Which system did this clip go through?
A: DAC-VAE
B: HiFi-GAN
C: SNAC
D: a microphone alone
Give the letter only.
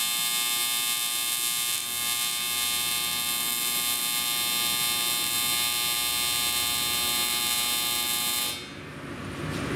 D